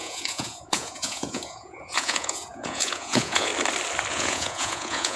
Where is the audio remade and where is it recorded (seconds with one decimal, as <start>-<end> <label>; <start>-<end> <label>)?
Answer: 0.0-3.5 remade; 3.5-4.1 recorded; 4.1-5.2 remade